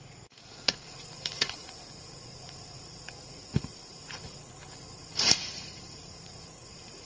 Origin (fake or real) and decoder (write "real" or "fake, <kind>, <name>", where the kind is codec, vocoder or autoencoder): fake, vocoder, Vocos